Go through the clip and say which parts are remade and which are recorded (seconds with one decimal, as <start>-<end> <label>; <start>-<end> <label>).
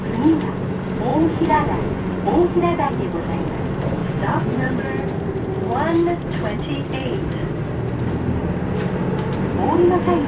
0.0-1.1 recorded; 1.1-2.9 remade; 2.9-4.0 recorded; 4.0-4.7 remade; 4.7-10.3 recorded